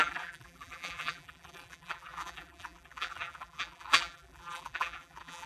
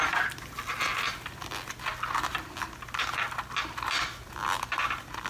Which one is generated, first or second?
first